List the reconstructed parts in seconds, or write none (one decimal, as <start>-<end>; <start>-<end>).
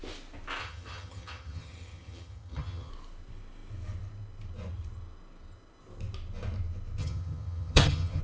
0.6-2.9; 7.0-8.2